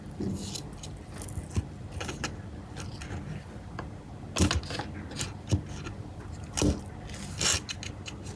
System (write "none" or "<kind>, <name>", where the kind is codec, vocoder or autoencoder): none